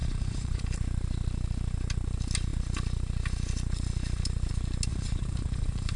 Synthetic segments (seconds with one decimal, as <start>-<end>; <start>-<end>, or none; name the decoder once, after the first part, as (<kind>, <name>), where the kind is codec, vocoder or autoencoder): 0.0-0.6 (vocoder, Vocos); 4.9-6.0